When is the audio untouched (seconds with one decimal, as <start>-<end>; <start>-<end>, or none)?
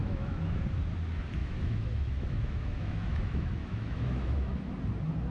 0.6-1.4; 4.6-5.3